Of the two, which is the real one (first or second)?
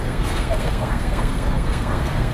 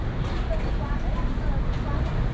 second